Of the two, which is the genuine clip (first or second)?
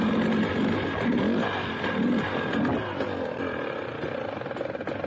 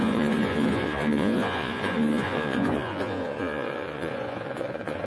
first